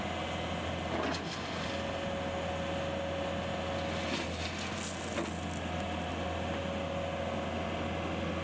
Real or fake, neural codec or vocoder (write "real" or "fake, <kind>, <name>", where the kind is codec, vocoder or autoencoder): real